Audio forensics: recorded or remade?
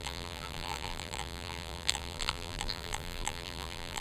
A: remade